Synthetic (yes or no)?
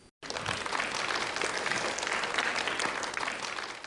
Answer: no